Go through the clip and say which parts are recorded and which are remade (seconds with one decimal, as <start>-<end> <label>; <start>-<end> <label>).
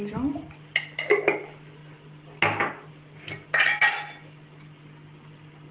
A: 0.0-5.7 recorded